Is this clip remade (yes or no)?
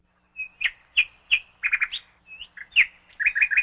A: no